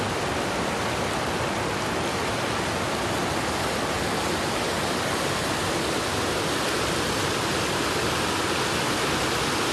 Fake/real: real